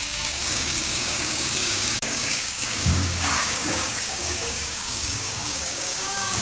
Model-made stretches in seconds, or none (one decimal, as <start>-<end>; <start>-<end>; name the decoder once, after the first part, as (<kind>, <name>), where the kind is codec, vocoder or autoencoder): 0.0-6.4 (codec, DAC)